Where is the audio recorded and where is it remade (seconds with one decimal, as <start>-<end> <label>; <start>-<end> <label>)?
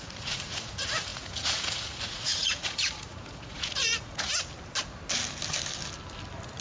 0.0-4.3 remade; 4.3-6.6 recorded